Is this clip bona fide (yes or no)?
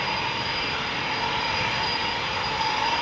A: yes